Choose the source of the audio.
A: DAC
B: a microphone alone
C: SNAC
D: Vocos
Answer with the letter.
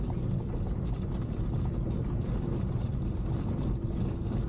B